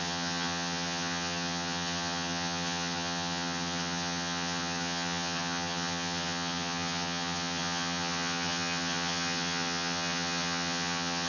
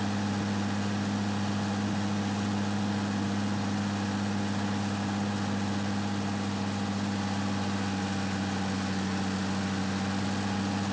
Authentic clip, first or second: second